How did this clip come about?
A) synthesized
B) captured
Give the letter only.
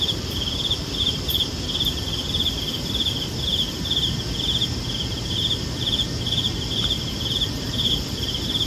A